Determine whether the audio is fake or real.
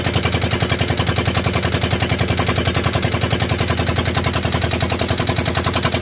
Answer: real